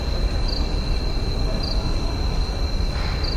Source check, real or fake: real